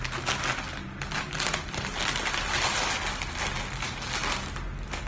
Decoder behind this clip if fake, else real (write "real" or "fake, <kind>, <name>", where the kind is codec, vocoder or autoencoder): real